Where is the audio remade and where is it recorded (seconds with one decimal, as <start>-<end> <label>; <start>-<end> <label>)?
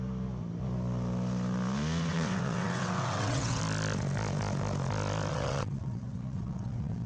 0.0-2.1 recorded; 2.1-3.6 remade; 3.6-5.3 recorded; 5.3-7.1 remade